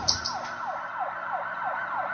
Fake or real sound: real